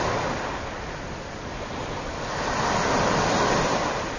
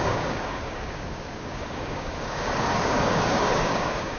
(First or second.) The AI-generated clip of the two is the second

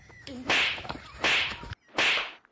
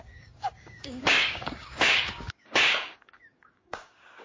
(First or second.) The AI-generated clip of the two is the second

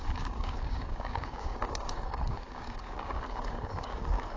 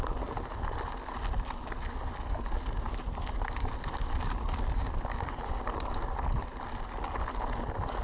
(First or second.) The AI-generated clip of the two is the first